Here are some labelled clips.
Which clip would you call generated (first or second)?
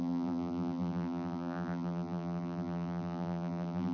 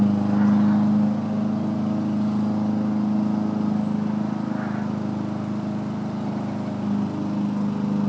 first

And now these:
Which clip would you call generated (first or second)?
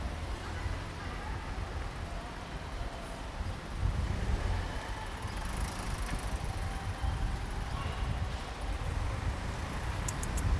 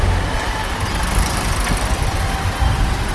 first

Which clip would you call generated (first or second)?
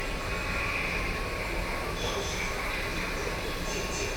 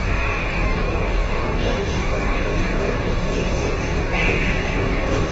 second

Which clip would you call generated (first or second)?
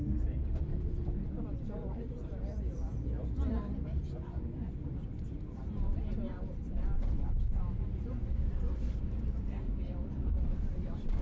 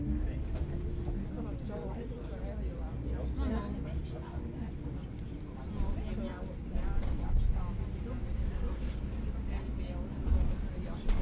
first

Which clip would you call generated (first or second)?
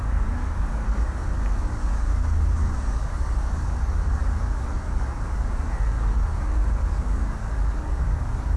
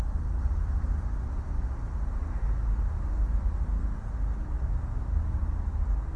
first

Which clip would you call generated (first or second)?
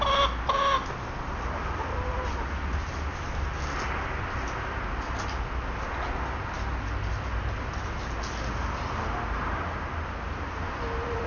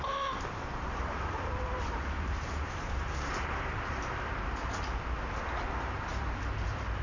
second